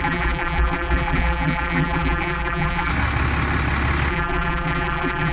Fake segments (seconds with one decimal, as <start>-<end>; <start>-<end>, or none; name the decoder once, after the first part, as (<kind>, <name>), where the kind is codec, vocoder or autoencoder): 0.0-2.9 (vocoder, BigVGAN v2); 4.1-5.3